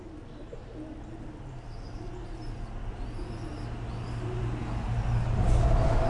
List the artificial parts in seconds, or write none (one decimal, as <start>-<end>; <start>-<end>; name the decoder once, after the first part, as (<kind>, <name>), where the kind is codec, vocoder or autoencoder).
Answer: none